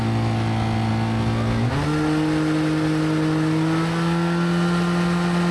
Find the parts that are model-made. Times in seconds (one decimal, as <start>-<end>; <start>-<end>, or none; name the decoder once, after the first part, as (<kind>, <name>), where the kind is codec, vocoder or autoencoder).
none